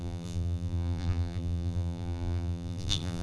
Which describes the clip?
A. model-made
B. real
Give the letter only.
A